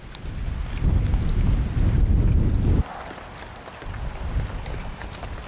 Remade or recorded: recorded